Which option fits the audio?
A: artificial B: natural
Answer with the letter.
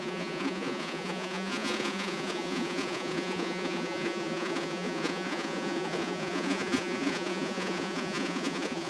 A